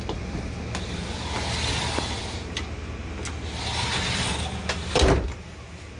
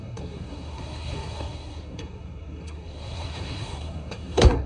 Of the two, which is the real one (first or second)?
first